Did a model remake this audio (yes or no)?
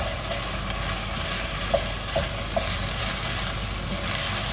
no